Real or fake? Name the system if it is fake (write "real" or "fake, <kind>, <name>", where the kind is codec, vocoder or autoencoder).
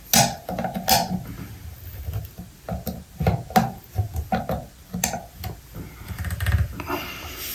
real